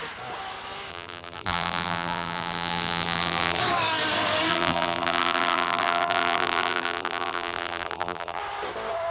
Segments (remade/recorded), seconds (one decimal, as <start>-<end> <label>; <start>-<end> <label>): 0.0-0.9 recorded; 0.9-3.6 remade; 3.6-4.5 recorded; 4.5-8.4 remade; 8.4-9.1 recorded